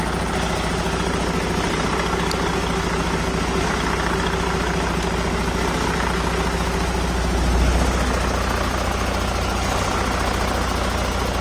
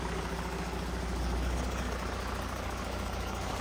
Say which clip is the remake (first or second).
second